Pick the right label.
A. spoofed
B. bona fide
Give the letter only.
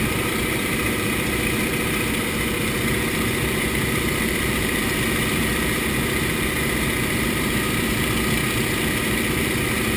A